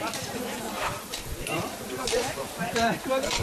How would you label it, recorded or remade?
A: remade